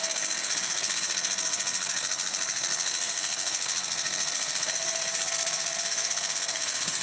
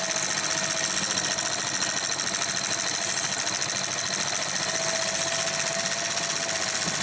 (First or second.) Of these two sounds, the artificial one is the first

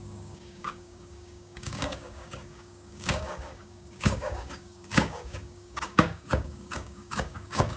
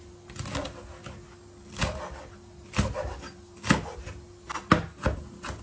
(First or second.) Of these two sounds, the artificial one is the first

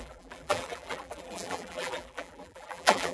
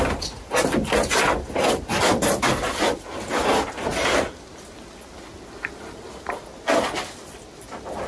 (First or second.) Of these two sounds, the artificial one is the first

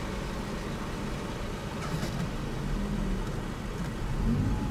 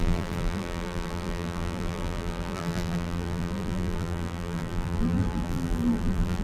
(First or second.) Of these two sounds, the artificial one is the second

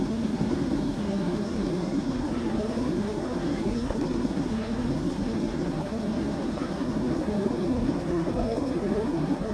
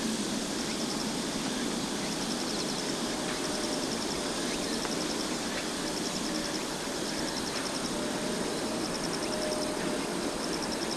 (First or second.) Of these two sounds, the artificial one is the first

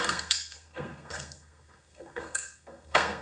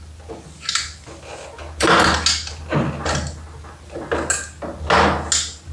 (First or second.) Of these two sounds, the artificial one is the first